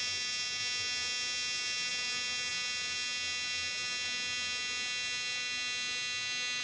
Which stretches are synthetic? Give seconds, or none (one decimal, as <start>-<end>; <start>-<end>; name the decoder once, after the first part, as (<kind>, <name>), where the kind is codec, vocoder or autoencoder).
none